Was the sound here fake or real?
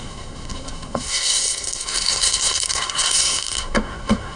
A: fake